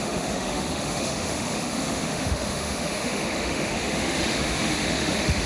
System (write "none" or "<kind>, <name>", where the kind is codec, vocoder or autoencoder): autoencoder, DAC-VAE